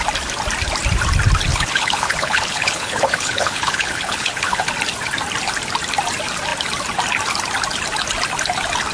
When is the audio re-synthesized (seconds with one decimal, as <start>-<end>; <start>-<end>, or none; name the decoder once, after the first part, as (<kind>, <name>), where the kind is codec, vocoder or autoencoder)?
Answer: 1.5-4.7 (codec, HILCodec)